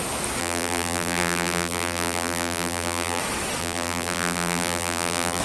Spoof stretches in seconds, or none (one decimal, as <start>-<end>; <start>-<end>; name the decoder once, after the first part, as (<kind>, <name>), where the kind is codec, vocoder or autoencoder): 0.4-3.2 (vocoder, BigVGAN v2); 3.6-5.4